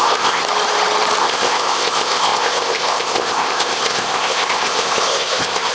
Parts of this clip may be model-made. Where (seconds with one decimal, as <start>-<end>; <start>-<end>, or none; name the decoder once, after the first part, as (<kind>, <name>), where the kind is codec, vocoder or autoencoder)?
0.0-0.4 (codec, ZipCodec); 1.2-5.7